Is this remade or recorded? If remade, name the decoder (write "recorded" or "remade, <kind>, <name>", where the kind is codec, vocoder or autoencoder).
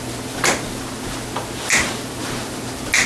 recorded